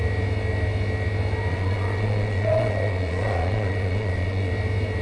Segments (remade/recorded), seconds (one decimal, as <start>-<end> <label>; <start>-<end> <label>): 0.0-1.5 recorded; 1.5-4.5 remade; 4.5-5.0 recorded